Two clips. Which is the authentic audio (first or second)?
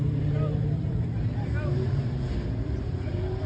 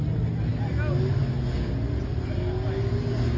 second